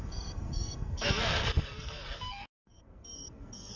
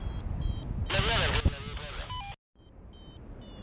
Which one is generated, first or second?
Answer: first